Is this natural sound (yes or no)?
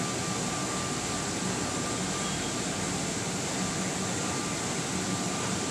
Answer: yes